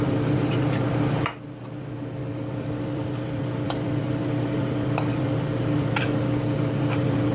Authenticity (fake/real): fake